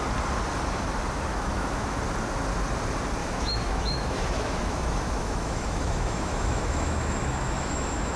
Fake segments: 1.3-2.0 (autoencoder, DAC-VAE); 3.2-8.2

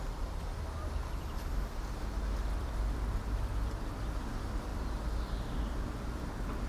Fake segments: none

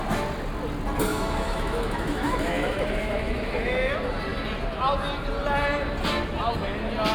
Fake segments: 1.1-3.9 (autoencoder, DAC-VAE)